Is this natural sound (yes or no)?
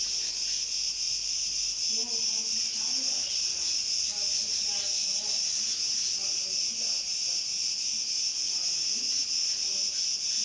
yes